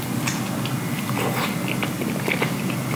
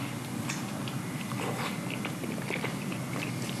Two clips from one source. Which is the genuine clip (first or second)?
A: first